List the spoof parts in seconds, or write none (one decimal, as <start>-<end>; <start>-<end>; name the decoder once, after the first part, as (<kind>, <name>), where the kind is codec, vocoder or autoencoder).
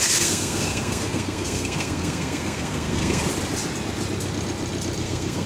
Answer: 0.0-3.2 (codec, SNAC); 5.0-5.5